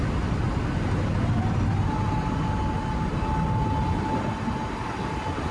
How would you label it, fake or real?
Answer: real